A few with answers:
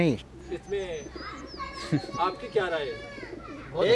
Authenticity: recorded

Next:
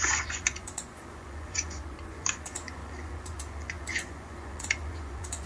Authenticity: remade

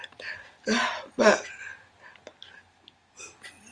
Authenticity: recorded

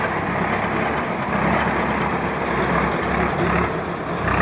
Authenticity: recorded